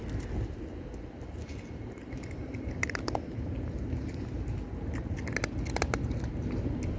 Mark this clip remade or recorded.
recorded